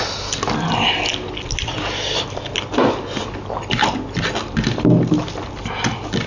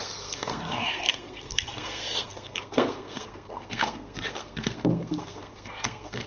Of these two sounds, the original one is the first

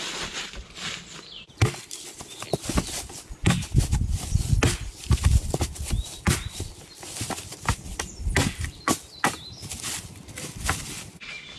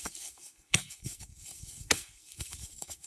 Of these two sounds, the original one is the first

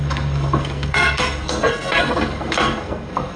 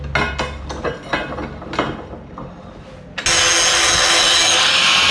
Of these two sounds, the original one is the second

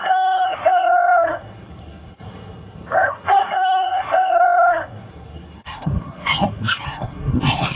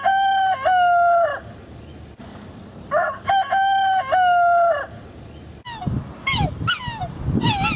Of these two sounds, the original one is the second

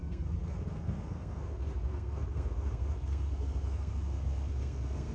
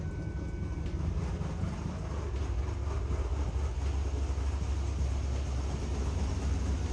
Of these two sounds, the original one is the second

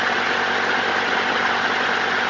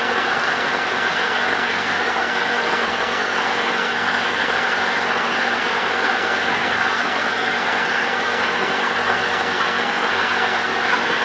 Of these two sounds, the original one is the first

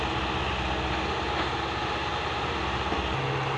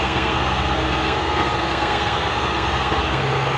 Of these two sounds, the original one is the first